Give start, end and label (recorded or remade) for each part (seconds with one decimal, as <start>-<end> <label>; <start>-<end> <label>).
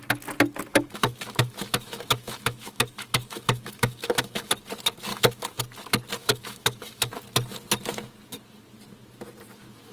0.0-0.7 recorded; 0.7-4.5 remade; 4.5-5.1 recorded; 5.1-5.6 remade; 5.6-6.2 recorded; 6.2-7.1 remade; 7.1-9.9 recorded